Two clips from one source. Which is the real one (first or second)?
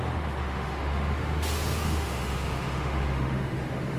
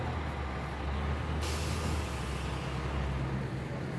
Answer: second